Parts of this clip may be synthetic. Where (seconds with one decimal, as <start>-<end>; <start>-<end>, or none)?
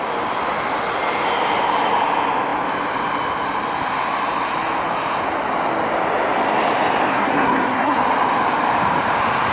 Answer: 7.1-8.0